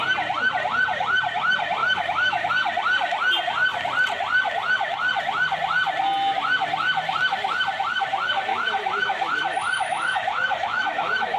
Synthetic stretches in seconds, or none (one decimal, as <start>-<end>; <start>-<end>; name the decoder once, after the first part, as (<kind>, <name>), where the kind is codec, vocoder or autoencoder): 1.8-2.5 (autoencoder, DAC-VAE); 8.5-11.4